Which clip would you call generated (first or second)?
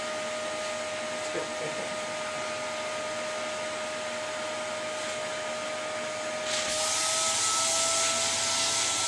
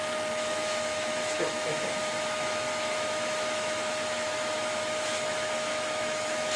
second